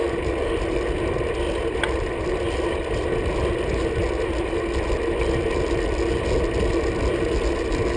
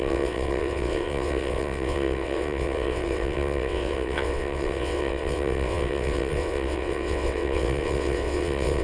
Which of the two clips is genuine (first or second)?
first